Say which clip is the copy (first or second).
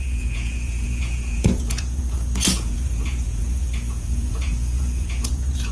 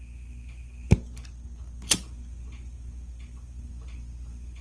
first